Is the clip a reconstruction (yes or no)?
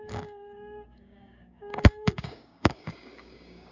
yes